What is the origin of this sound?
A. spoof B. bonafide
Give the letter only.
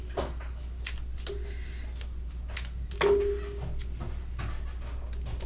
B